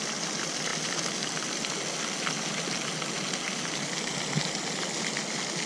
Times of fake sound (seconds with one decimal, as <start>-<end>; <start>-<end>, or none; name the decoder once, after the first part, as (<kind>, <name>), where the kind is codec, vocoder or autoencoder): none

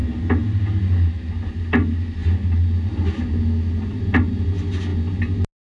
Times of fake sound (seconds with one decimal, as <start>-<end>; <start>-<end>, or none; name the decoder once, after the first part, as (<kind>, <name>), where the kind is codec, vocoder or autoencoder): none

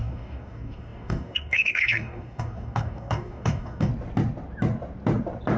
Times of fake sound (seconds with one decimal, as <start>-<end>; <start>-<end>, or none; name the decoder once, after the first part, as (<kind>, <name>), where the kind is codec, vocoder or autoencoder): 0.0-3.9 (codec, DAC)